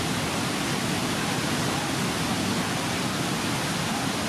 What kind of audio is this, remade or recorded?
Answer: recorded